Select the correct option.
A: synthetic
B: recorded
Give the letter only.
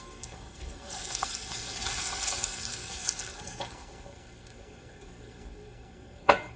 A